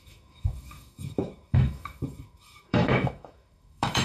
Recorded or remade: remade